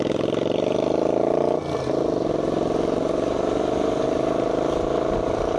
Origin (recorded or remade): recorded